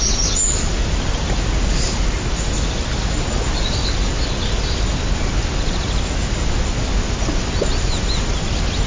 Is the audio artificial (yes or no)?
no